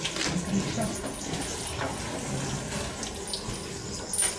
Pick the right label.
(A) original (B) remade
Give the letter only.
A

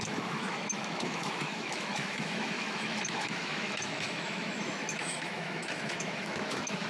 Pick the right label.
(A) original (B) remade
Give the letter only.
B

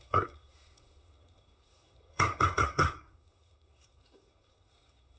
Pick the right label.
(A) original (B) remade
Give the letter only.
B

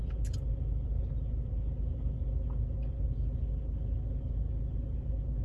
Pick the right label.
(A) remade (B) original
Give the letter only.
B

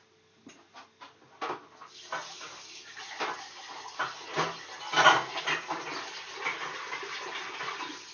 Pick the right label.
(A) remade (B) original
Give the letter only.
B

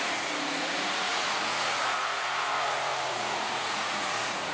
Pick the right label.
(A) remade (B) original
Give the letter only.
A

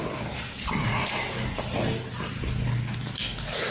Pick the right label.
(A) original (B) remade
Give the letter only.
A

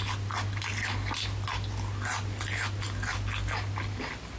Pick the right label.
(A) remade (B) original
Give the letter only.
B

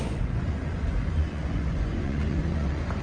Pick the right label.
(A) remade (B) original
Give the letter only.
A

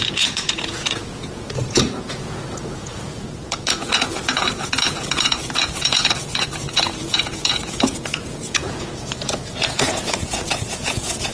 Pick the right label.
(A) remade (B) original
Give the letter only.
A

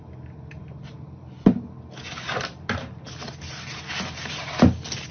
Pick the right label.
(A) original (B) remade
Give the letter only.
A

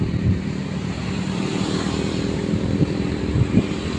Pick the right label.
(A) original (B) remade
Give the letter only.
B